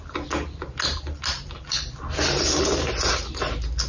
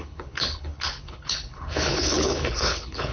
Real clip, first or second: first